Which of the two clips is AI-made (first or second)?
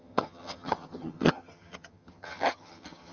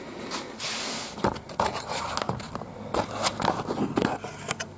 first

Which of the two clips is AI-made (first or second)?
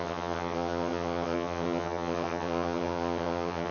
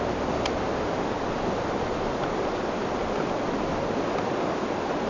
first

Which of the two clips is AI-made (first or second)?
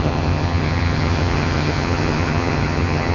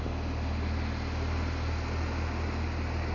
first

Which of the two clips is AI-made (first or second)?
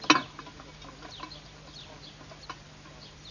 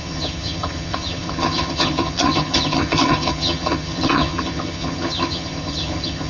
second